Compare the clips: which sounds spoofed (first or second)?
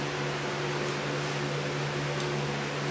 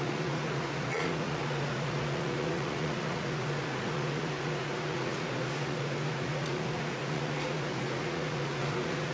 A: second